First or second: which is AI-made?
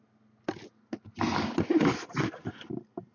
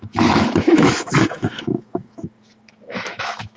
second